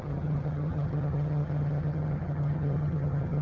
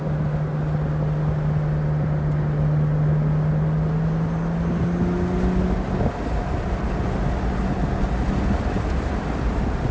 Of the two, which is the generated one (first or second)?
first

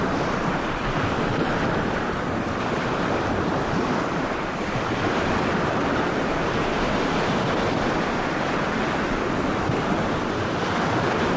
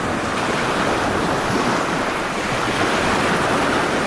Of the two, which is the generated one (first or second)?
first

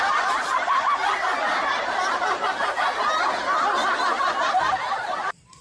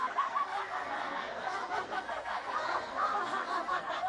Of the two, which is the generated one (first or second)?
second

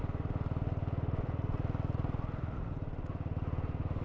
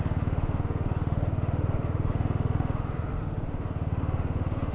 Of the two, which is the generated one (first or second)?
second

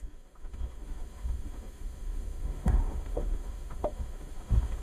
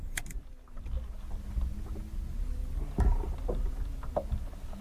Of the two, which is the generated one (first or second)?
first